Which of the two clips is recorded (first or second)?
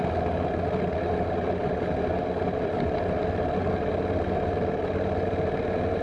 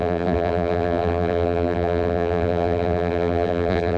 first